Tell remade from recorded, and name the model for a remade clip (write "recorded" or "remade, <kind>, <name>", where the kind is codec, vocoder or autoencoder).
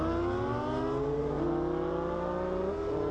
recorded